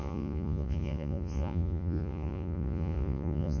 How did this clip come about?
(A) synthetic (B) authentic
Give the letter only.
A